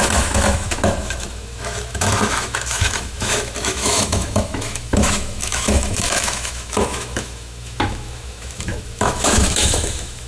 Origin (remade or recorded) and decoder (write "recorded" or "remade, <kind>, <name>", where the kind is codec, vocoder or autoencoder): remade, autoencoder, DAC-VAE